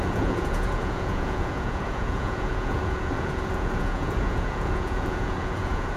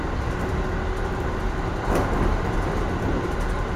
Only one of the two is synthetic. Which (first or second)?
first